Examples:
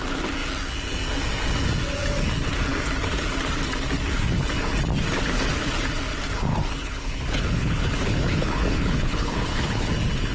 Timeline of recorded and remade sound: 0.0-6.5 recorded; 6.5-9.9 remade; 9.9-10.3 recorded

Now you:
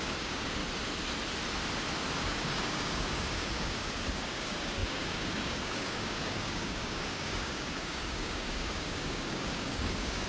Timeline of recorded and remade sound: 0.0-0.6 remade; 0.6-2.2 recorded; 2.2-10.3 remade